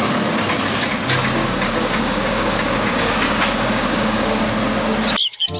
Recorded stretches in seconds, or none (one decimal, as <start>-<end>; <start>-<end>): 0.0-1.4; 4.4-5.6